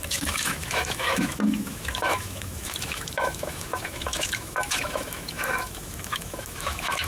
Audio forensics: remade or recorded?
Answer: remade